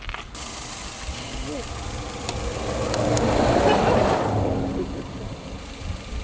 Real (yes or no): yes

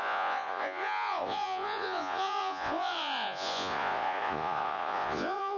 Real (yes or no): no